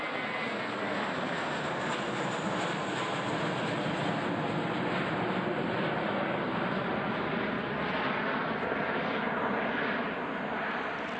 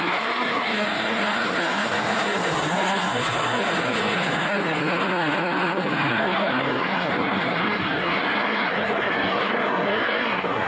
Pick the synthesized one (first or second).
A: second